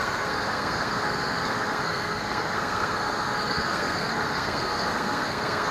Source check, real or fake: fake